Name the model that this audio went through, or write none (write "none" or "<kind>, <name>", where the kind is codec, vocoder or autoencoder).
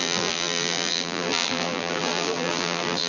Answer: vocoder, BigVGAN v2